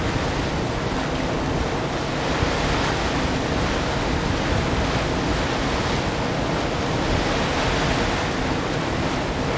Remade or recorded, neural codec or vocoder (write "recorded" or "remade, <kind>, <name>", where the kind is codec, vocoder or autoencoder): recorded